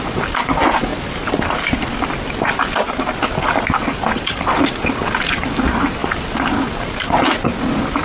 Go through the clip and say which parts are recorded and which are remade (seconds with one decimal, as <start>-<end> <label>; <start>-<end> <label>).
0.0-8.0 recorded